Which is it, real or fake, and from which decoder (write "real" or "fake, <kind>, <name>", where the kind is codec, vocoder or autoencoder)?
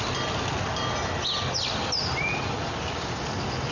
real